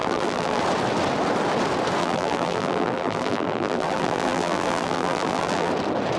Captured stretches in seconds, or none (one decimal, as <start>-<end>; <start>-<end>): 0.6-2.0; 5.7-6.2